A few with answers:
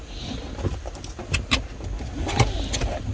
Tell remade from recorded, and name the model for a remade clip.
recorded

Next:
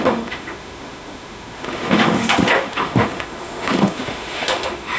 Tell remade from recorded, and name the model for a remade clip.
remade, autoencoder, DAC-VAE